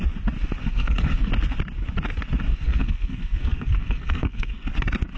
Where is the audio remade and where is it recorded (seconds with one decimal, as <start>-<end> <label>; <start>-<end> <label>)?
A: 0.0-0.6 recorded; 0.6-1.3 remade; 1.3-2.5 recorded; 2.5-4.7 remade; 4.7-5.2 recorded